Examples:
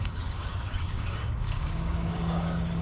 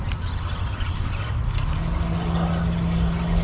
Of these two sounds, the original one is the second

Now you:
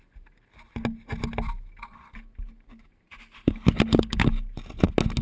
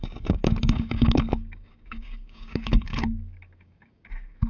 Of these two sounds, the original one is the first